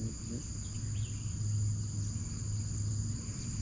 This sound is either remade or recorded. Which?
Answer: recorded